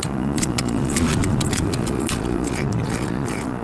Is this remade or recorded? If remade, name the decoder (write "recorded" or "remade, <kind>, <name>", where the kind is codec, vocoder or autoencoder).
remade, vocoder, Vocos